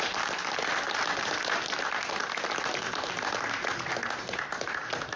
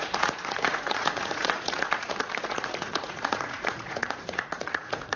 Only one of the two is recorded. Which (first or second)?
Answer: first